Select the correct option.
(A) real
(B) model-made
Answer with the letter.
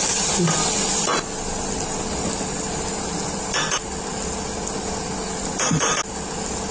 A